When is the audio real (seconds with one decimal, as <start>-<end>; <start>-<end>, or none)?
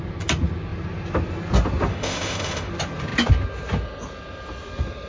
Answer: 0.0-1.9; 2.7-5.1